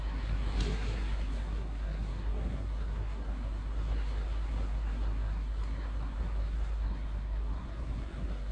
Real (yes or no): no